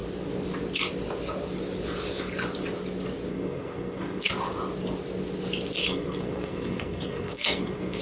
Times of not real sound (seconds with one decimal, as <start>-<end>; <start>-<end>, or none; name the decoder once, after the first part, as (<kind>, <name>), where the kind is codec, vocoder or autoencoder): 3.3-4.3 (codec, SNAC); 5.8-8.0